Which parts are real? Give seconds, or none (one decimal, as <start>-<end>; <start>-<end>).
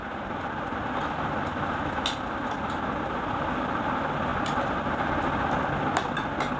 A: 0.0-6.6